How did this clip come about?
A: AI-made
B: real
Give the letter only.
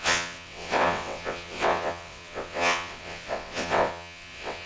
A